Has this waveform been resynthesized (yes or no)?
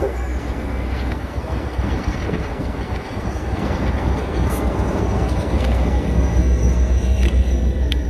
yes